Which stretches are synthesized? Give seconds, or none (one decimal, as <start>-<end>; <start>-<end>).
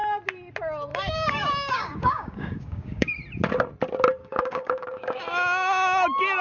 0.9-3.1; 4.2-5.2